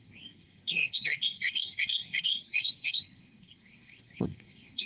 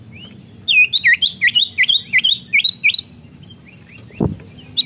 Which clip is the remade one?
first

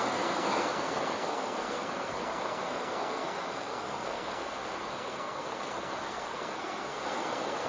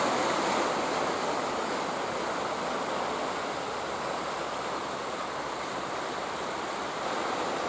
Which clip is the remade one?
first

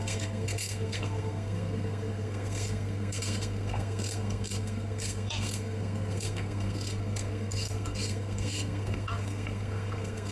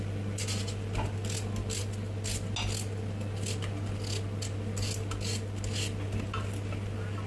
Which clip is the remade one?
first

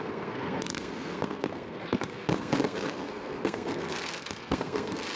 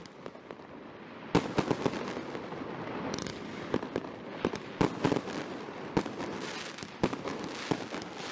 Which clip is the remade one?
first